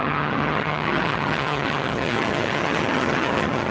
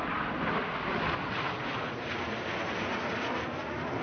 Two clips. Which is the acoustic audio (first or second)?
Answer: second